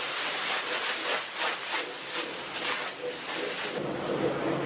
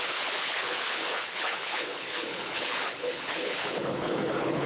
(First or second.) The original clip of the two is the first